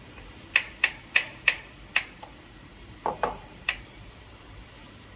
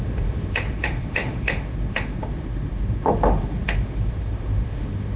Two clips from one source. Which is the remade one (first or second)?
second